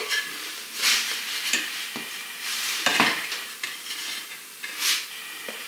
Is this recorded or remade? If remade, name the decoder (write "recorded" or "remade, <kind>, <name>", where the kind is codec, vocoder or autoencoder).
remade, vocoder, BigVGAN v2